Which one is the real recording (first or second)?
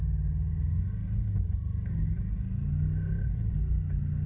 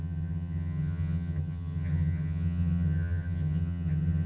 first